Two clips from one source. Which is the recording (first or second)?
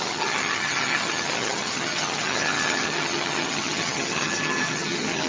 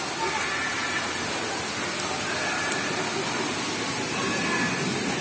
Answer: second